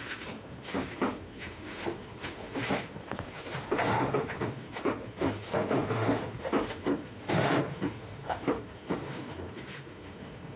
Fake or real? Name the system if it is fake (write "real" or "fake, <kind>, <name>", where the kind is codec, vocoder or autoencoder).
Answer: fake, autoencoder, DAC-VAE